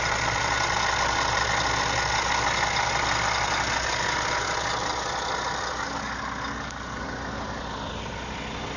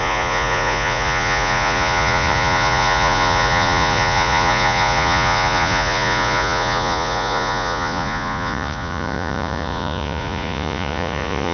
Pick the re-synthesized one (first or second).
second